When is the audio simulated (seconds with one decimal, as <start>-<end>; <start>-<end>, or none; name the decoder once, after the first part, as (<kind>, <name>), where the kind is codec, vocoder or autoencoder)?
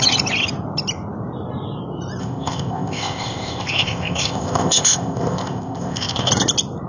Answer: 2.2-6.3 (codec, ZipCodec)